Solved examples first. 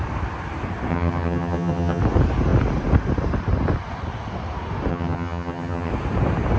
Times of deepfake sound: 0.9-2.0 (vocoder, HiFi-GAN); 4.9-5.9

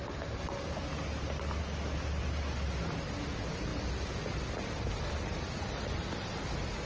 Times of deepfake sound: none

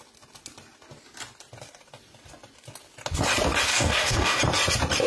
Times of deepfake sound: 3.7-4.4 (codec, DAC)

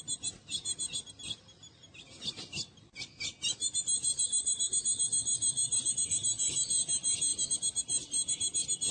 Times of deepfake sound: none

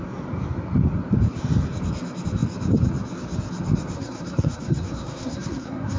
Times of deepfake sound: 3.9-6.0 (codec, SNAC)

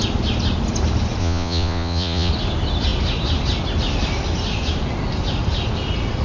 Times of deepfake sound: 1.2-2.3 (vocoder, Vocos)

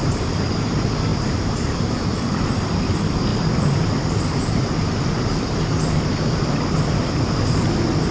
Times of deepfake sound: 1.1-2.5 (vocoder, BigVGAN v2)

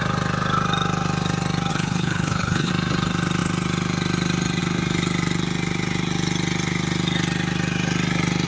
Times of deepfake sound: 1.7-2.7 (codec, HILCodec)